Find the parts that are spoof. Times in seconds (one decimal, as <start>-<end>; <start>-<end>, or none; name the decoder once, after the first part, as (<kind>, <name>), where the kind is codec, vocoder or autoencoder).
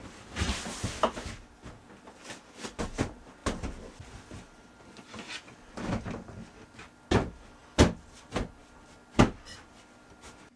none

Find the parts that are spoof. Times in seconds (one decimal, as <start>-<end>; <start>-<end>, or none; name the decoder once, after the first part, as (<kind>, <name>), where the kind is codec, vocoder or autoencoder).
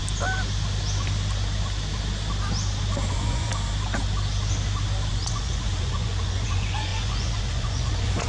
3.1-3.5 (vocoder, Vocos); 5.1-8.3